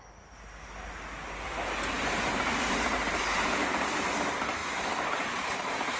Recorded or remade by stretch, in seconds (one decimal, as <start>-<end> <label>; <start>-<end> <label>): 0.0-6.0 recorded